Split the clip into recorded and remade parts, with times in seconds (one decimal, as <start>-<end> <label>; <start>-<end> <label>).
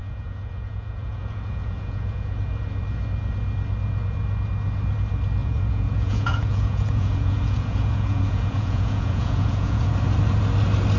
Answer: 0.0-2.4 remade; 2.4-5.4 recorded; 5.4-9.9 remade; 9.9-11.0 recorded